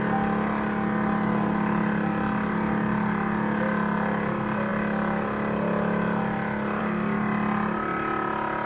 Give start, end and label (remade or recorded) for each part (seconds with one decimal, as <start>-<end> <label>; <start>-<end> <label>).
0.0-8.7 recorded